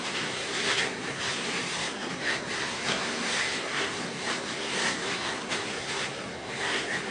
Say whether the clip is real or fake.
fake